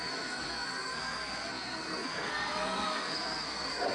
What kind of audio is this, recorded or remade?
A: remade